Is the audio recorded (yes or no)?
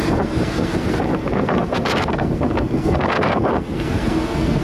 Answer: no